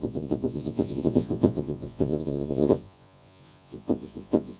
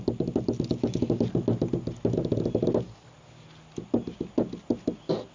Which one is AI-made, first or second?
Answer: first